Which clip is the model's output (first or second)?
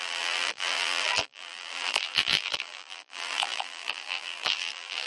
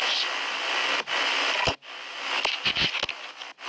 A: first